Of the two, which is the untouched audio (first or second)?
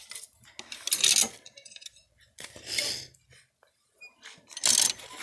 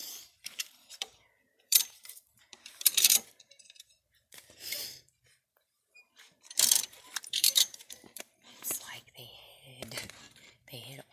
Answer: first